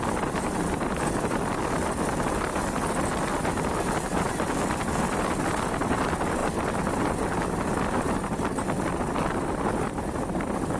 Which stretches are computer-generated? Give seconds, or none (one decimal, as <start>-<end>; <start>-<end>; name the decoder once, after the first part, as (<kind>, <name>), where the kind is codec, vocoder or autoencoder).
none